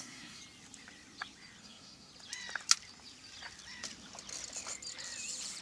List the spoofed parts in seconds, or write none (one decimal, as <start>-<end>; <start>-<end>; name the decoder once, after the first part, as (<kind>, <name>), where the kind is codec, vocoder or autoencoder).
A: 0.0-0.4 (codec, SNAC); 1.6-2.1